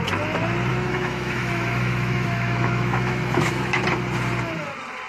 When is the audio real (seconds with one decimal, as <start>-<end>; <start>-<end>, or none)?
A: 0.0-0.7; 3.8-5.1